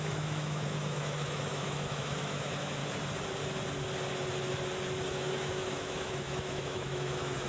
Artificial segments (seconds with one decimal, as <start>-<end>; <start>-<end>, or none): 0.0-2.8; 5.1-7.5